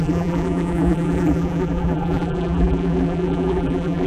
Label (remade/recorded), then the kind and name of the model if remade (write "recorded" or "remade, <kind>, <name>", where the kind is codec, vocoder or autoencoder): remade, vocoder, BigVGAN v2